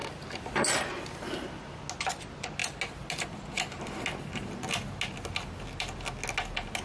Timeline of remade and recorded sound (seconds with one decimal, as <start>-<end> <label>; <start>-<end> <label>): 0.0-0.7 remade; 0.7-6.8 recorded